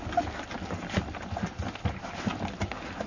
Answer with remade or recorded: recorded